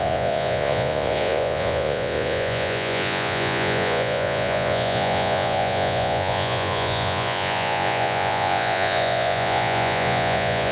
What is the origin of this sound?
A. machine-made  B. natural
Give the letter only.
A